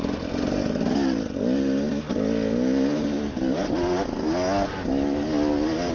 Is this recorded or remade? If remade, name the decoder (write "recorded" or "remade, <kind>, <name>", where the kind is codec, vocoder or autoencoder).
recorded